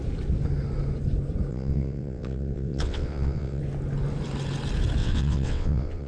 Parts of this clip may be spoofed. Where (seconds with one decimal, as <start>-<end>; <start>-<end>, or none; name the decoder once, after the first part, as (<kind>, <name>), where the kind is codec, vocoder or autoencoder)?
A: 1.5-3.6 (vocoder, WaveNeXt); 5.0-6.1